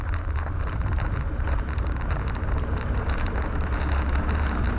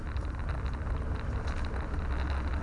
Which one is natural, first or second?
second